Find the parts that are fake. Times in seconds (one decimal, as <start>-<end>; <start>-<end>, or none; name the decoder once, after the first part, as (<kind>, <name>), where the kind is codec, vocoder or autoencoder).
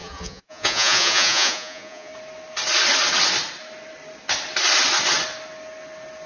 0.0-2.1 (vocoder, Vocos)